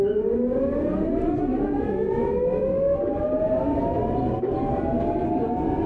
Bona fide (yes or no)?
yes